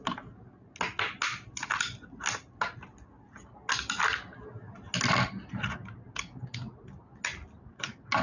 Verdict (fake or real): real